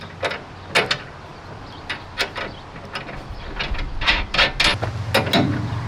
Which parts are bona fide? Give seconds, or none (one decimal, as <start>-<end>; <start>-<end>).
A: 0.0-5.9